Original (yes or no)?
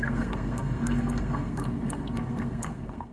no